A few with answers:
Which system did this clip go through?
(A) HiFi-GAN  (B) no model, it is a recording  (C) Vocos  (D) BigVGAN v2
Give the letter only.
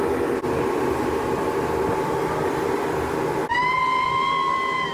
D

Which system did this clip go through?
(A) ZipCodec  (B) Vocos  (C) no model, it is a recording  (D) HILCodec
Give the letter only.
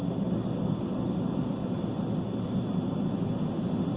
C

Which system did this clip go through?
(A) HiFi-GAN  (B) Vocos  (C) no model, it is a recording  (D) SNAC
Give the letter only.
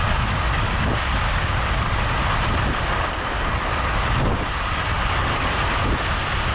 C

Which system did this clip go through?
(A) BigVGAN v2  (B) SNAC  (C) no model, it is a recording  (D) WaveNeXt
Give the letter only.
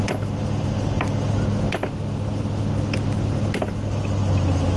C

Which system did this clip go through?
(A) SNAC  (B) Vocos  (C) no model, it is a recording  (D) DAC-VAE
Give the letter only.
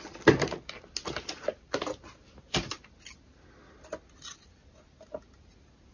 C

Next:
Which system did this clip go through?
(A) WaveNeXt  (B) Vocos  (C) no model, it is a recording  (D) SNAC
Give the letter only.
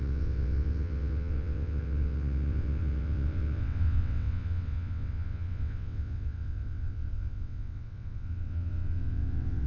A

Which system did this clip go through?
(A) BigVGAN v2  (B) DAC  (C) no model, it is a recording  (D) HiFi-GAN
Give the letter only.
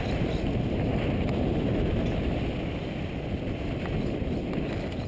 C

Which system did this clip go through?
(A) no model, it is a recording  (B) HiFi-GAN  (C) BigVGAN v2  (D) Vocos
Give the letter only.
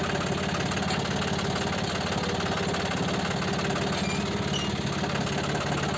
A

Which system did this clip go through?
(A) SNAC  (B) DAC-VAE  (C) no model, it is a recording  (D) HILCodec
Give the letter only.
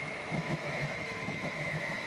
B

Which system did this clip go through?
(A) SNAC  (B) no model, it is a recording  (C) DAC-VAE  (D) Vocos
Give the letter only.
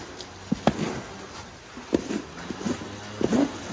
B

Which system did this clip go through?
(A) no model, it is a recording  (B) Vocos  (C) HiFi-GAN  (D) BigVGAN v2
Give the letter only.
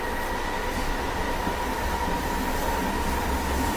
A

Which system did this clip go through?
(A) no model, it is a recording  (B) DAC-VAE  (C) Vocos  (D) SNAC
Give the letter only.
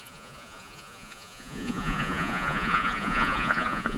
C